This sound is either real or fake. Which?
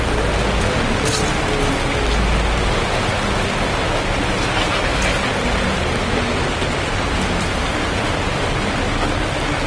real